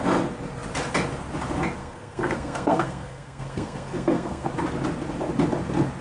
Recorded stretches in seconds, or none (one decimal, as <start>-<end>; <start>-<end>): 0.0-1.8; 4.5-6.0